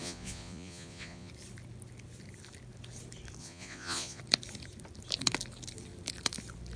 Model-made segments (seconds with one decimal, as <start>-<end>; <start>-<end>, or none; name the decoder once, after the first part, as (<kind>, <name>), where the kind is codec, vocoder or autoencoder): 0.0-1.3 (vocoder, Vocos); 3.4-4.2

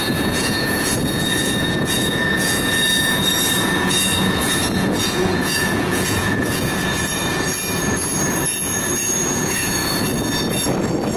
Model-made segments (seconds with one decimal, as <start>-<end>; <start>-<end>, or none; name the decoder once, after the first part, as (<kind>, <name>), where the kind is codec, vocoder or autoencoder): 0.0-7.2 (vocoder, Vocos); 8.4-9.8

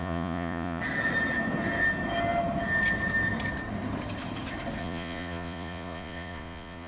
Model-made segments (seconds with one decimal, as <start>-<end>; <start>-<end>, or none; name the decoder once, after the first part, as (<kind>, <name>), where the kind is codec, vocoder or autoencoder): 0.0-0.8 (vocoder, Vocos); 4.8-6.9

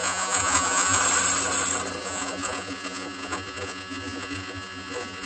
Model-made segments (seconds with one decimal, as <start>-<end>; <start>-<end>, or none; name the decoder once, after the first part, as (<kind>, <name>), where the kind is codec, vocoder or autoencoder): 0.0-1.0 (vocoder, Vocos); 2.0-5.3

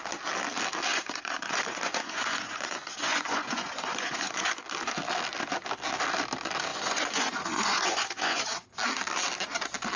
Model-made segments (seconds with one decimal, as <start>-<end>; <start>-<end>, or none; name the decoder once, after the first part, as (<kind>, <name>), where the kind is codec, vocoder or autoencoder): 0.9-4.5 (vocoder, Vocos); 6.7-8.7

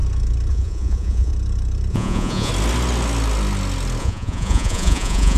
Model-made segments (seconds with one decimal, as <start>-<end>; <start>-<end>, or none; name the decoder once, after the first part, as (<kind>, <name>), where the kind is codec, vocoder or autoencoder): 0.5-1.3 (vocoder, Vocos); 1.9-2.5; 4.0-5.4